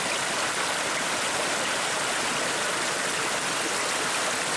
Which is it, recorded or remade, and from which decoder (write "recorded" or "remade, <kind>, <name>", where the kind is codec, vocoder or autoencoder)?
recorded